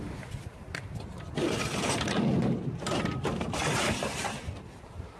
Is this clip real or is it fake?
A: real